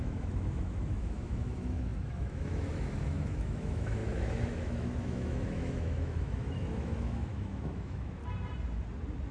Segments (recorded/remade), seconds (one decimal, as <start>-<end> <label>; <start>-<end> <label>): 0.0-8.2 remade; 8.2-9.3 recorded